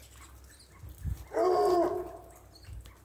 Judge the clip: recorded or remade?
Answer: recorded